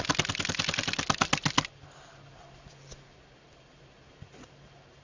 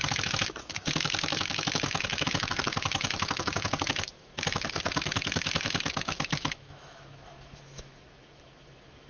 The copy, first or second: second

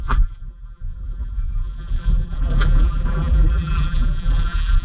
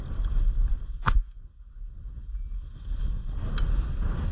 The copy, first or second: first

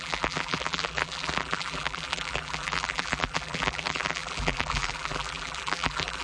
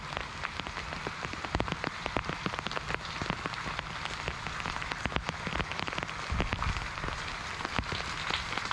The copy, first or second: first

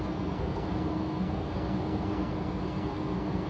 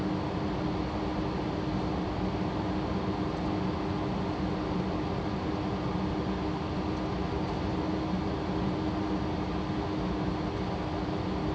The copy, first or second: first